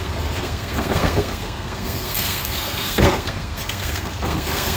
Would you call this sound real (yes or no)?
no